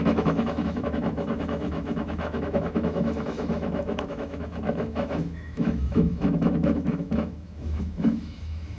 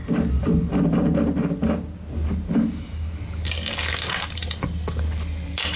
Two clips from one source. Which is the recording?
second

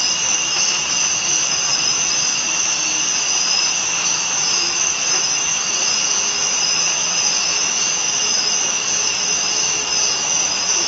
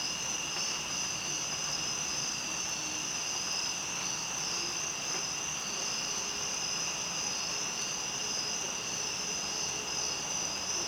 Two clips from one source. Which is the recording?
second